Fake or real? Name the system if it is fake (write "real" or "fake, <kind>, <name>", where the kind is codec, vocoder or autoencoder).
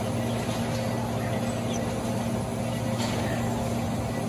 real